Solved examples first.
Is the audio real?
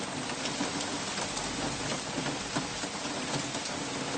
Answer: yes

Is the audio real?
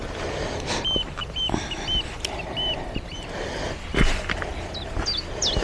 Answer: yes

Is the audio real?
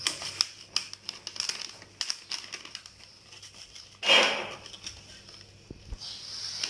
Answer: yes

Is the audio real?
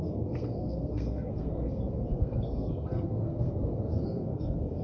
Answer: no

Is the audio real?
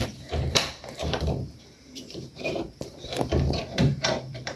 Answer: no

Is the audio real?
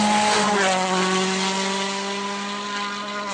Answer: yes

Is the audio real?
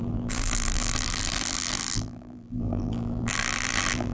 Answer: no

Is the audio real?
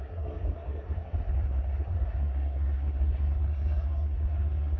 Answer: no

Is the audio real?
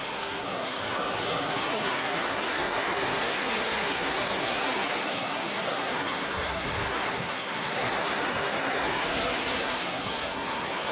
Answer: no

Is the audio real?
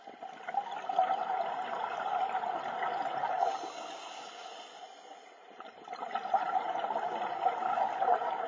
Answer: yes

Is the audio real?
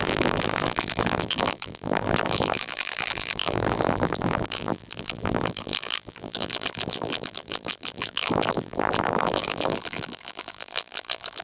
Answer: no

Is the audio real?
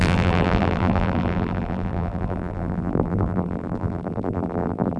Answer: no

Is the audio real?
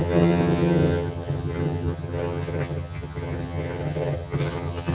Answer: no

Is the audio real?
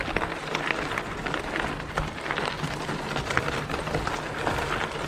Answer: yes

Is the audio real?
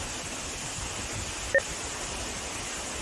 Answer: yes